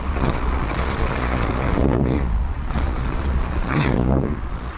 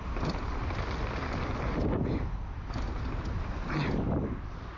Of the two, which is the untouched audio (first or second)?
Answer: second